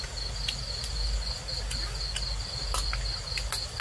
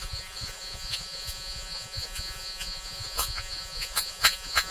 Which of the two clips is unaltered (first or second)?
first